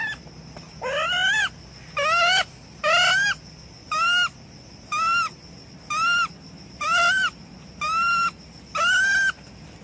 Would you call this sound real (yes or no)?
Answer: yes